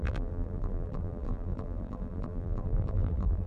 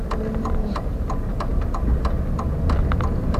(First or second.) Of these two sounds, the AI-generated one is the first